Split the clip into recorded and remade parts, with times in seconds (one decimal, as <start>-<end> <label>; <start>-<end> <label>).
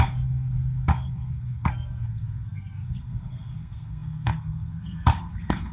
0.0-5.7 remade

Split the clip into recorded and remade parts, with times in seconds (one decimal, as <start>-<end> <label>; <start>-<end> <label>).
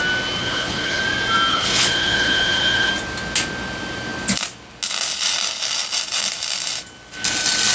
0.0-0.4 recorded; 0.4-1.0 remade; 1.0-1.5 recorded; 1.5-2.9 remade; 2.9-7.7 recorded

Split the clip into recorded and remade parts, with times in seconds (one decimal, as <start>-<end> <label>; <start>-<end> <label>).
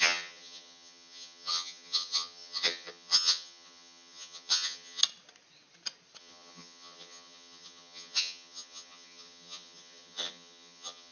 0.0-5.0 remade; 5.0-6.2 recorded; 6.2-11.1 remade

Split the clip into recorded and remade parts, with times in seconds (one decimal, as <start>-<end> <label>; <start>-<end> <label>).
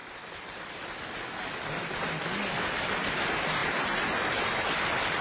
0.0-1.4 remade; 1.4-5.2 recorded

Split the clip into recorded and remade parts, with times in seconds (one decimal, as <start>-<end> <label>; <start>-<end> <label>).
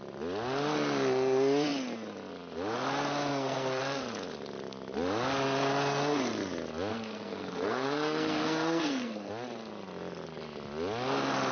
0.0-3.3 recorded; 3.3-3.8 remade; 3.8-6.9 recorded; 6.9-9.3 remade; 9.3-11.5 recorded